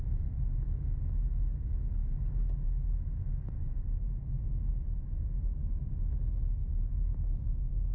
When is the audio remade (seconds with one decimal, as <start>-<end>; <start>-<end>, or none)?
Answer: 4.7-5.6